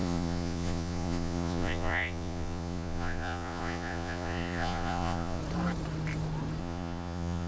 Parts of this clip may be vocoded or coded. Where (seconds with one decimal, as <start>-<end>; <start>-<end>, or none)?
0.0-5.4; 6.6-7.5